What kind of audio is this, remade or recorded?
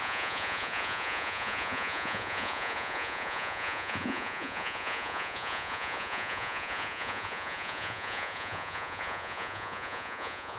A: remade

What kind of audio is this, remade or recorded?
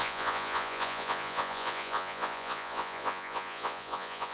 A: remade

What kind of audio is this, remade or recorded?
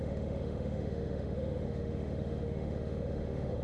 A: remade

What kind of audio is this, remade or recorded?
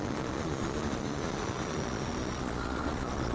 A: remade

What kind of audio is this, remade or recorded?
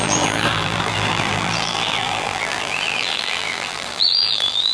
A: remade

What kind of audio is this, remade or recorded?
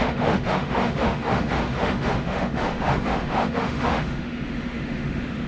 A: remade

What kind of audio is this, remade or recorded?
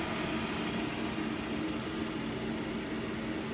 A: recorded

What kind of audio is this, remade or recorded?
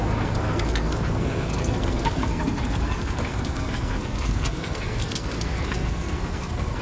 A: remade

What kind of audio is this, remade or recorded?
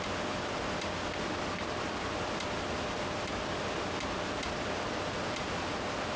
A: recorded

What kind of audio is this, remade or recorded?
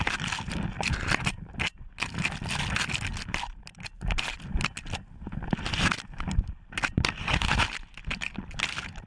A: recorded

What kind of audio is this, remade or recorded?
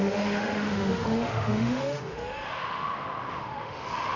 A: remade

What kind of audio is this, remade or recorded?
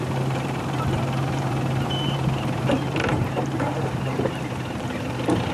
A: remade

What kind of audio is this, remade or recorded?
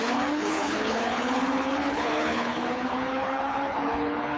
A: remade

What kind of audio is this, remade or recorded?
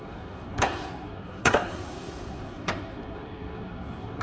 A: remade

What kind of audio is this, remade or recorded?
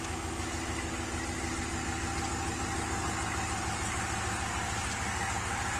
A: recorded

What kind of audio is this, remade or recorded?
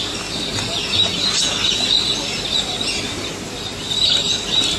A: recorded